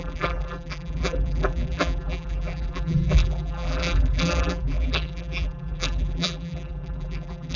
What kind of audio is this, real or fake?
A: fake